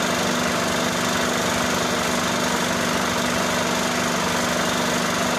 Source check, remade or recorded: recorded